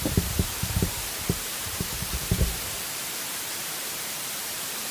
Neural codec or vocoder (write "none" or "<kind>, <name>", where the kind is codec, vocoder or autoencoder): vocoder, BigVGAN v2